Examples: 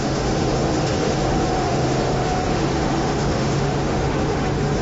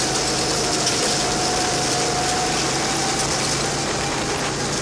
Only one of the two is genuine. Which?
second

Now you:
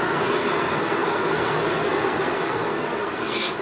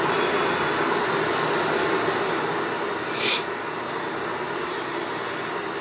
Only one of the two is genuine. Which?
second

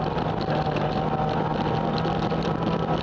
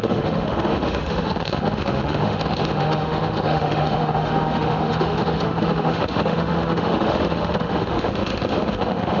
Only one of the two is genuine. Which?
first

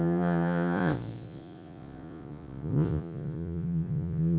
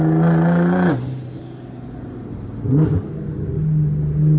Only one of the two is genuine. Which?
second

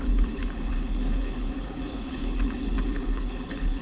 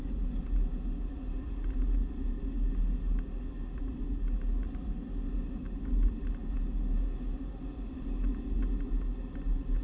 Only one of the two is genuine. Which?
second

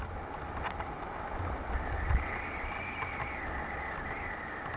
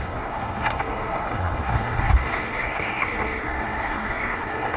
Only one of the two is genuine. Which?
first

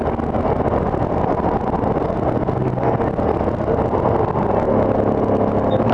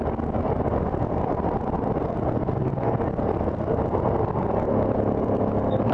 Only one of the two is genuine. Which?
first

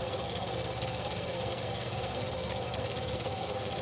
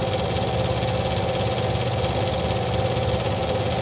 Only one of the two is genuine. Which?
second